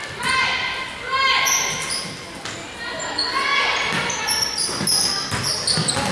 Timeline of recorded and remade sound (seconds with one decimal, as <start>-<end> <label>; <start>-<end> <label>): 0.0-6.1 recorded